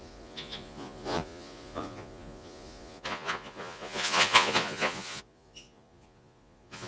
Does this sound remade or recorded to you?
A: remade